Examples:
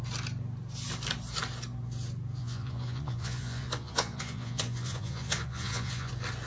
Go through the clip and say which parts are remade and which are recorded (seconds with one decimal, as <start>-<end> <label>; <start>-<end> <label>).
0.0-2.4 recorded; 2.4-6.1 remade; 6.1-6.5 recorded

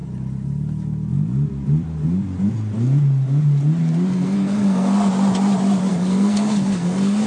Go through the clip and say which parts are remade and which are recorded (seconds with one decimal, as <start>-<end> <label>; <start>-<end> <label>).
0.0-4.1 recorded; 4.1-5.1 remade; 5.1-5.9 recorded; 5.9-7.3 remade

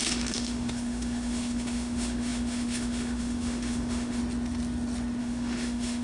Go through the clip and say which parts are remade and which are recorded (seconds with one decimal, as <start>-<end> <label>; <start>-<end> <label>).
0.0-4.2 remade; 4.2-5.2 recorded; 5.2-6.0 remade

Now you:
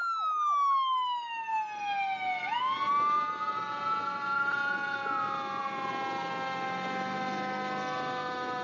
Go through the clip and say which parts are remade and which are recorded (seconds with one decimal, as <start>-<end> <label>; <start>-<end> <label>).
0.0-8.6 recorded

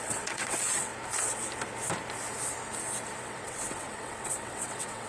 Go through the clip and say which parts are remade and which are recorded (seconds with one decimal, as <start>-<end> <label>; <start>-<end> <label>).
0.0-0.9 remade; 0.9-3.2 recorded; 3.2-5.1 remade

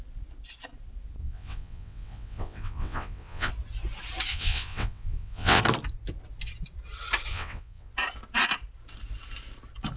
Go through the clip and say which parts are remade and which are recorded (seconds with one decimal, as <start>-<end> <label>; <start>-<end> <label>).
0.0-1.2 recorded; 1.2-3.5 remade; 3.5-4.3 recorded; 4.3-5.6 remade; 5.6-7.3 recorded; 7.3-7.9 remade; 7.9-10.0 recorded